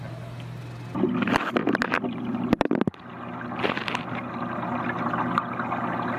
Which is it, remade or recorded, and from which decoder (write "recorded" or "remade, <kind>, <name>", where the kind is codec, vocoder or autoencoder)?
recorded